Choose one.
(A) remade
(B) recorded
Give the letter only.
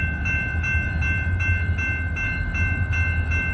B